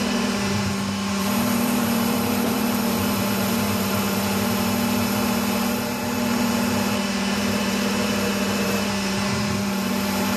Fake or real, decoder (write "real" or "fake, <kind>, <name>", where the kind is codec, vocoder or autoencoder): fake, vocoder, BigVGAN v2